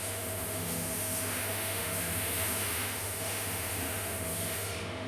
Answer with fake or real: fake